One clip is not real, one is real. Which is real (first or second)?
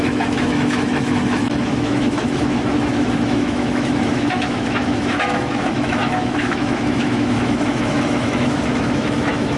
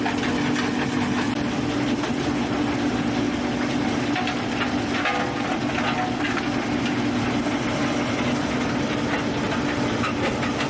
second